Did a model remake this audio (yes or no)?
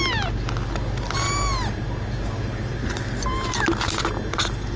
no